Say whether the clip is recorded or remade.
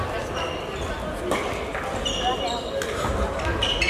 recorded